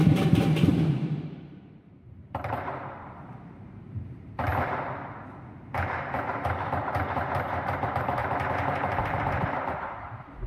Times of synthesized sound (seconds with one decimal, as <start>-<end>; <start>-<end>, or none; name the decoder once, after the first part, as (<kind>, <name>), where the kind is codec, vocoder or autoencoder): 0.0-4.5 (vocoder, BigVGAN v2); 6.3-10.5